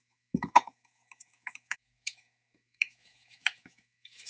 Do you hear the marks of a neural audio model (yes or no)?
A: yes